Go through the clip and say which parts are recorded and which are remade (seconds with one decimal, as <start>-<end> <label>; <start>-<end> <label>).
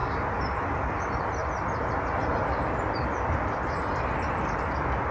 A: 0.0-5.1 recorded